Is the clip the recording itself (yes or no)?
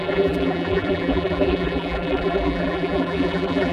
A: no